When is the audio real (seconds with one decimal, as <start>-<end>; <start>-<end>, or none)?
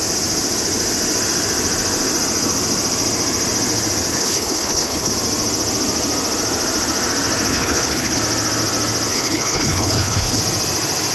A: 0.0-4.1; 5.1-7.5; 8.2-9.1; 10.4-11.1